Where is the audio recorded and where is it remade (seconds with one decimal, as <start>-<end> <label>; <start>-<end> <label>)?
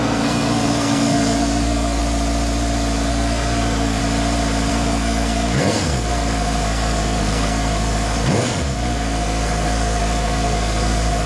0.0-2.0 remade; 2.0-3.1 recorded; 3.1-4.0 remade; 4.0-4.7 recorded; 4.7-11.3 remade